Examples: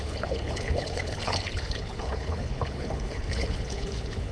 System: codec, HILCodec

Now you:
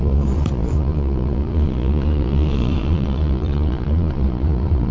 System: vocoder, Vocos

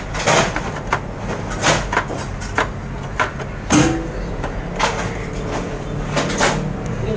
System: none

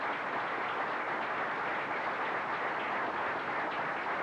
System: none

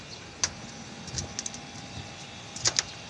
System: none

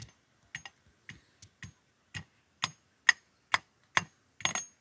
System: none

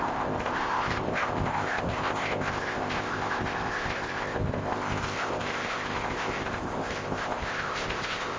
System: codec, ZipCodec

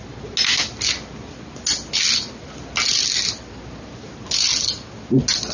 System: none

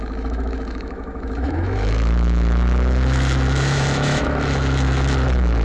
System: autoencoder, DAC-VAE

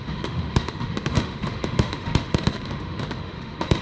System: autoencoder, DAC-VAE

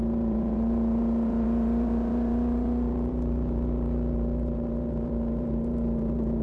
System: vocoder, BigVGAN v2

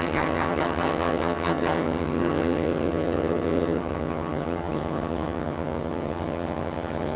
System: vocoder, HiFi-GAN